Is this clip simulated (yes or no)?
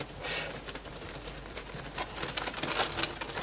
no